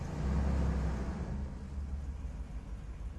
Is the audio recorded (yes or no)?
yes